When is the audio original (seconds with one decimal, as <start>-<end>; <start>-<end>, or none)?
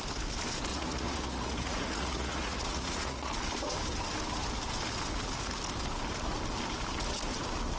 0.0-0.7; 3.3-7.8